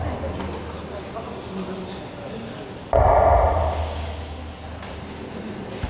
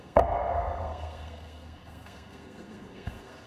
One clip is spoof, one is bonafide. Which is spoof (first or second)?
second